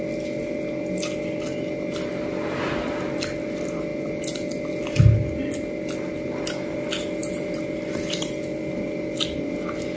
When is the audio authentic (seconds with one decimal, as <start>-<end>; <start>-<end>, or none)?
0.0-7.2; 8.6-10.0